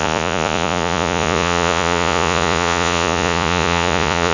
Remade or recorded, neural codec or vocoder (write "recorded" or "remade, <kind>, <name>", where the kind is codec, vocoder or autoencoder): remade, vocoder, Vocos